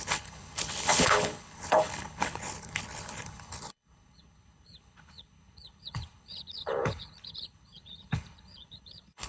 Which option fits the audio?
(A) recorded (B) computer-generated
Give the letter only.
B